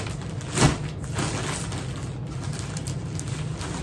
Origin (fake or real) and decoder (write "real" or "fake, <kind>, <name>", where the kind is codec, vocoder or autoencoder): real